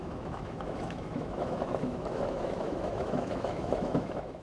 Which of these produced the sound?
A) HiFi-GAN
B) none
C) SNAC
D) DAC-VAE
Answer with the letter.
D